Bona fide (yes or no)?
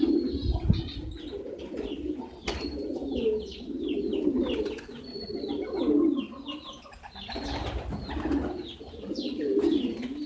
yes